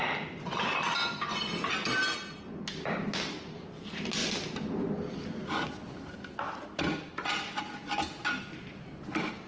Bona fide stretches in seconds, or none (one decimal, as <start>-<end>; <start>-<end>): 0.0-9.5